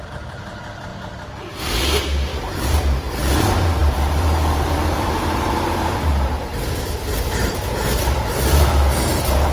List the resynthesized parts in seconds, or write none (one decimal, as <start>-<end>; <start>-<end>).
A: 0.0-0.9; 1.5-9.5